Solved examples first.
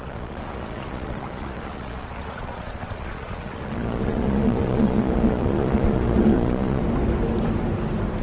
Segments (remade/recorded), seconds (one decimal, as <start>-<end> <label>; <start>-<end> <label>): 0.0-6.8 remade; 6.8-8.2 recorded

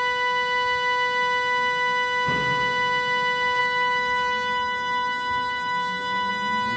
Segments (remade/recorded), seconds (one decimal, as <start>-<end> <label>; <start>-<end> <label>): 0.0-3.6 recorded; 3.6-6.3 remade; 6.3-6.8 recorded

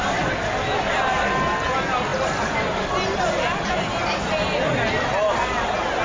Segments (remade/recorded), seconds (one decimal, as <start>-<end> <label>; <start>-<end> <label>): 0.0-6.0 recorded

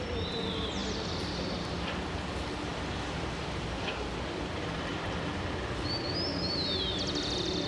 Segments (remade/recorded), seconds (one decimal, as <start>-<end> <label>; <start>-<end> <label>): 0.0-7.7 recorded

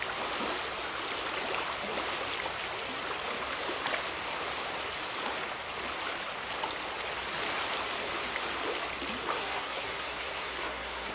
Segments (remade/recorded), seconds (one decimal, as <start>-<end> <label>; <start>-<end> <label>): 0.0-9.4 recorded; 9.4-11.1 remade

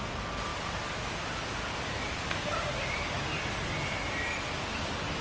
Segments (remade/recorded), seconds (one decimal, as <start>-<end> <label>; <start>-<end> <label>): 0.0-5.2 recorded

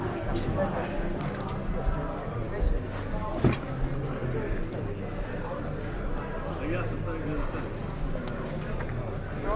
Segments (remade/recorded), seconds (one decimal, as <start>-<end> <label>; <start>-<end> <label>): 0.0-9.6 recorded

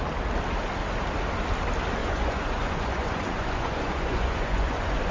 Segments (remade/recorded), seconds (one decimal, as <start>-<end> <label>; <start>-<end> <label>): 0.0-2.0 recorded; 2.0-5.1 remade